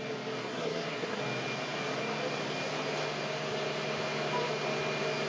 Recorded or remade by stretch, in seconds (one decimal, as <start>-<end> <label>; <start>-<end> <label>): 0.0-0.4 recorded; 0.4-1.2 remade; 1.2-5.3 recorded